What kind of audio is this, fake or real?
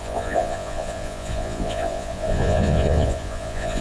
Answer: fake